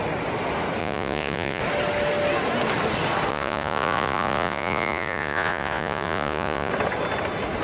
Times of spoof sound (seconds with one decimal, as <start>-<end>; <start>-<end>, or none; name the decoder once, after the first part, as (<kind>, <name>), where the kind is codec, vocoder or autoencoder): 0.8-1.6 (vocoder, Vocos); 3.3-6.7